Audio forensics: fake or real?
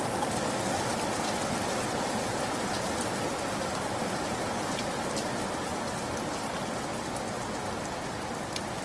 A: real